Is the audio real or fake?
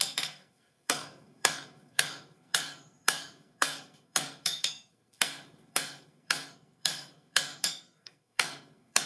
fake